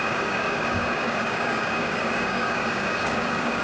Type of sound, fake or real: fake